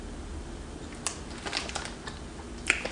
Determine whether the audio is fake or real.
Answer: real